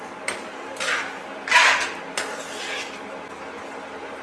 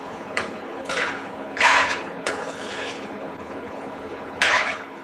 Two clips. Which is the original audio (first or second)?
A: first